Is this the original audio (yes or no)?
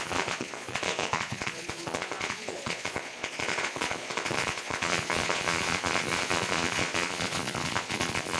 no